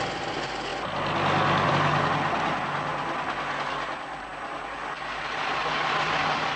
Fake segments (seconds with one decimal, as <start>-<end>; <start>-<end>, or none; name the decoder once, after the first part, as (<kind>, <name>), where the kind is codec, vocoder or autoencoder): none